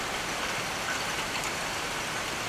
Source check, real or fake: real